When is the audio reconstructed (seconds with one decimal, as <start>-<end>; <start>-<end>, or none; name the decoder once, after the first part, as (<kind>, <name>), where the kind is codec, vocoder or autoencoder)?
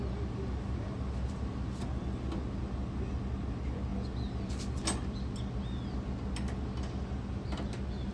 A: none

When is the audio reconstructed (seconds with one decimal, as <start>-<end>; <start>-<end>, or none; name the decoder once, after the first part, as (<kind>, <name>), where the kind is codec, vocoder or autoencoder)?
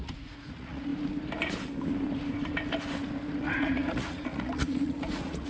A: 0.0-0.9 (vocoder, Vocos); 3.4-5.5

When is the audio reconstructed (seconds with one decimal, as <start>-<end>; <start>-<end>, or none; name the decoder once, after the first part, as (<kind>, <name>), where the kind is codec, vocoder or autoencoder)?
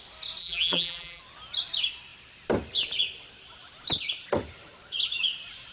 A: 0.4-1.2 (vocoder, BigVGAN v2)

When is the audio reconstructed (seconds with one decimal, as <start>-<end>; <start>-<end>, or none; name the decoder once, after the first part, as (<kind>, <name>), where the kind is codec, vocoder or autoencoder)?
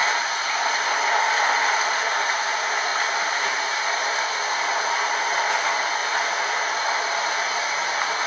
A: none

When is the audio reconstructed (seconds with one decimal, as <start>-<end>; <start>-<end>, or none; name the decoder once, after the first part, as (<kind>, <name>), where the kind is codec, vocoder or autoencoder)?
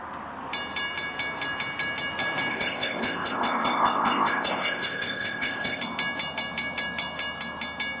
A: 2.5-5.8 (codec, ZipCodec)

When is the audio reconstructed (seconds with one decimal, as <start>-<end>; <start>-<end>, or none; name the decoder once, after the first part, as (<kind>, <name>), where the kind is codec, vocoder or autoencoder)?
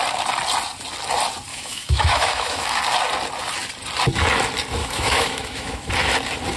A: 1.5-2.8 (autoencoder, DAC-VAE); 4.8-5.9